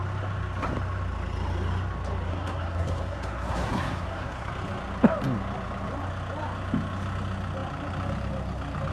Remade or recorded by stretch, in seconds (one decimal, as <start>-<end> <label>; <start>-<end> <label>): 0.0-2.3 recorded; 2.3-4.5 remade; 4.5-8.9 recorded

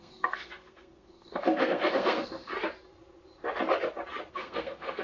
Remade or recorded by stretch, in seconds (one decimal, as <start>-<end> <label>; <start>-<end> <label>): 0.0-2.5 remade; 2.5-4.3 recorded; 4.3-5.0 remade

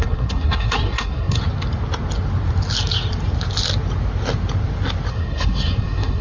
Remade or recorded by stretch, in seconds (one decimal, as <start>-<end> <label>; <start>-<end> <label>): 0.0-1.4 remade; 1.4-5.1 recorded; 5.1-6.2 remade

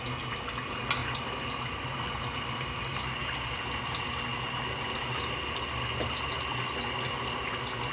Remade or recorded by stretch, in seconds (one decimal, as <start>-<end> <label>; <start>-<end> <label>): 0.0-7.9 recorded